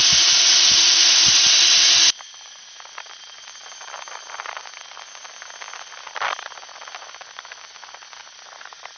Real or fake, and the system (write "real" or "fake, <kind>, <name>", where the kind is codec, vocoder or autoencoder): real